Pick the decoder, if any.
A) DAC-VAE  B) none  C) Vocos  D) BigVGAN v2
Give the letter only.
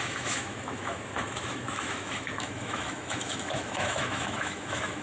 A